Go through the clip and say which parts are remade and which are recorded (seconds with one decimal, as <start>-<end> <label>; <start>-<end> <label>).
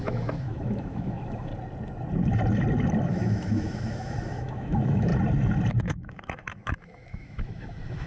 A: 0.0-1.5 remade; 1.5-3.0 recorded; 3.0-5.1 remade; 5.1-5.8 recorded; 5.8-8.1 remade